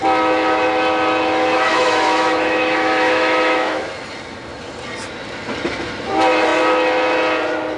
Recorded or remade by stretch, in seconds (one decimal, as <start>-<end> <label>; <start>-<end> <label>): 0.0-1.7 recorded; 1.7-3.9 remade; 3.9-7.8 recorded